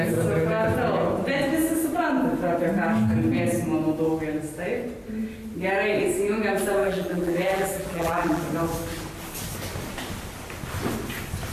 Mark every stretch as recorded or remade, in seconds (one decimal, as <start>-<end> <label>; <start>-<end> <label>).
0.0-6.8 recorded; 6.8-8.4 remade; 8.4-11.5 recorded